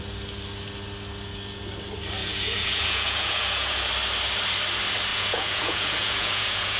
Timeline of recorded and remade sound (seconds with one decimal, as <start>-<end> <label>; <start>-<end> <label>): 0.0-2.2 recorded; 2.2-3.9 remade; 3.9-5.1 recorded; 5.1-6.8 remade